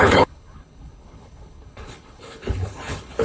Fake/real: fake